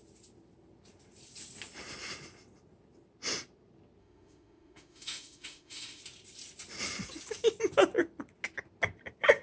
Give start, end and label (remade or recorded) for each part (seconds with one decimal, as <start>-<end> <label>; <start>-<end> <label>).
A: 0.0-4.0 recorded; 4.0-6.0 remade; 6.0-9.4 recorded